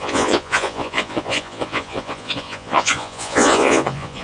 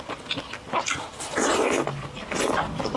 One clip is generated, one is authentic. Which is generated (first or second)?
first